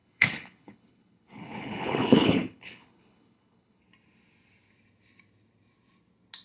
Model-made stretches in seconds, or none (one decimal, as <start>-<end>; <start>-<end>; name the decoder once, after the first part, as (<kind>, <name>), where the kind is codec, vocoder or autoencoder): 0.0-3.8 (codec, HILCodec)